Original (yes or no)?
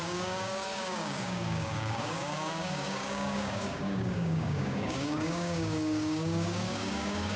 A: no